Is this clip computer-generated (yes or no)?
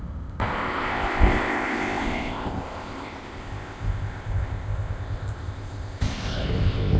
yes